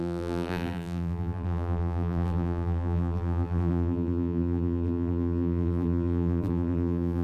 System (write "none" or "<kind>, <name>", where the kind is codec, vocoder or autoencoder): vocoder, BigVGAN v2